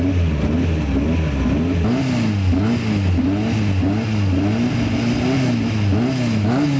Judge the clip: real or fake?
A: real